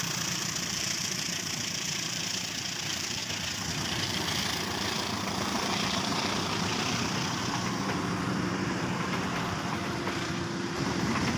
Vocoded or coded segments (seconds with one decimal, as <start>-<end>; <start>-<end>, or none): 0.0-3.2; 3.7-11.4